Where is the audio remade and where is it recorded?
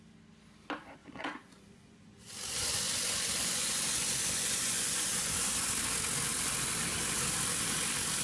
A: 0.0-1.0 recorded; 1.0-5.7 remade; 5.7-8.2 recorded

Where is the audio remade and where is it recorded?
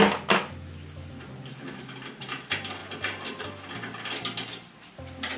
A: 0.0-5.4 recorded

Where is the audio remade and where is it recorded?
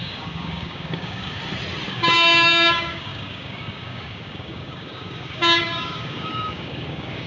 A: 0.0-1.4 remade; 1.4-1.9 recorded; 1.9-7.3 remade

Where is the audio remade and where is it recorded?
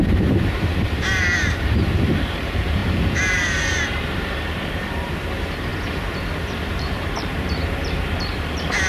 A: 0.0-5.7 remade; 5.7-6.7 recorded; 6.7-8.9 remade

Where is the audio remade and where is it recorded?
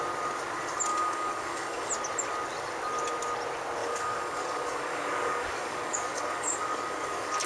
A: 0.0-0.9 recorded; 0.9-1.9 remade; 1.9-3.8 recorded; 3.8-7.5 remade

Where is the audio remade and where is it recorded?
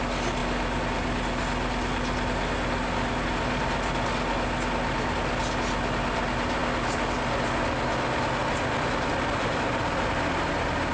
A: 0.0-10.9 recorded